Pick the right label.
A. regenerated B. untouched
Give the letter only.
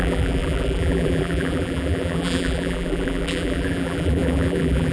A